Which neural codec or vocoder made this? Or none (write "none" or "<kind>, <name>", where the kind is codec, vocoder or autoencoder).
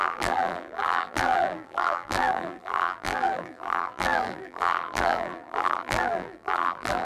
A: vocoder, BigVGAN v2